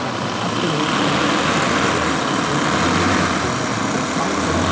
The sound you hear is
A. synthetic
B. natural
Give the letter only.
B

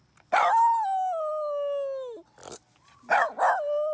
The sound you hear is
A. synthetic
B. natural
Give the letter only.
B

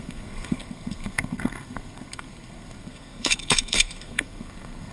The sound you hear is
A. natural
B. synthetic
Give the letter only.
B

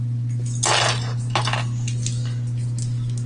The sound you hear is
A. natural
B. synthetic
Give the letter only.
A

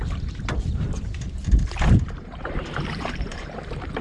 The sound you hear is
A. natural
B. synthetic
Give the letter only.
B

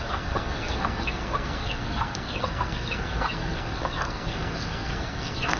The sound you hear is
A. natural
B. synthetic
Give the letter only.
B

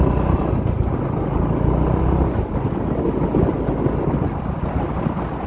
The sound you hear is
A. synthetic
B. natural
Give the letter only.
B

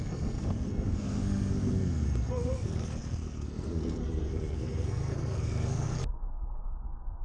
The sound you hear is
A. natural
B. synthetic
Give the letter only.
B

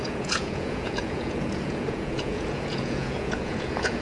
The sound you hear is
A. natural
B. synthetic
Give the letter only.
B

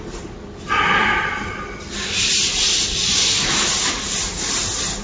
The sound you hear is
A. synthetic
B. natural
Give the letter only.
B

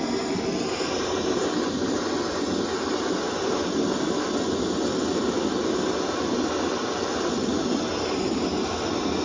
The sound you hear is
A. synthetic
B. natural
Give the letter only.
B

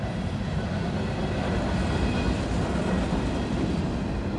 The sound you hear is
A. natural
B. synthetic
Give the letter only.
A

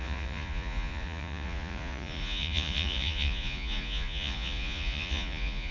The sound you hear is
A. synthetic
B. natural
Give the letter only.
A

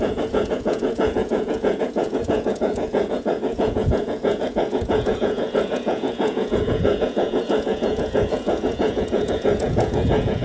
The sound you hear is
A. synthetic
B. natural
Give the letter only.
A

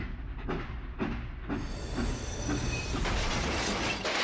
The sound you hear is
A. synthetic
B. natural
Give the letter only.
B